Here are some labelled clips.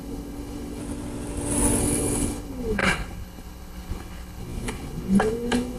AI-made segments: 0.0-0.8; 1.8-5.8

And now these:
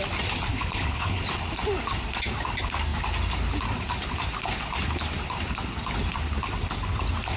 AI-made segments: 0.5-1.2

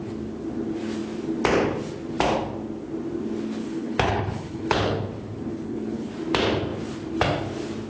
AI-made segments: 3.6-5.0; 5.5-6.1

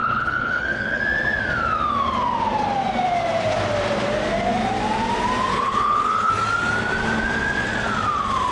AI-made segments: 0.0-1.0; 5.5-6.3

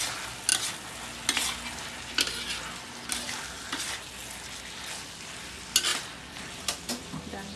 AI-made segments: none

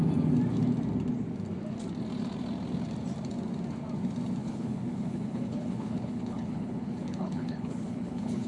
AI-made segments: 4.4-8.5

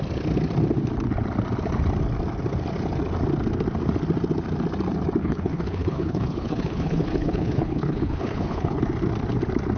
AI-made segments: 5.2-8.8

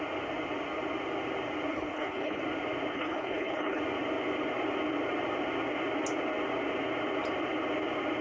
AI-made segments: 1.7-2.4; 2.9-3.8